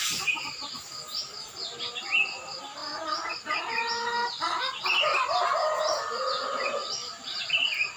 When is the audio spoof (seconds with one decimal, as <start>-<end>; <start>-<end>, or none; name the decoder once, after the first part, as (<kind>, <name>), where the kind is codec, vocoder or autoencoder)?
none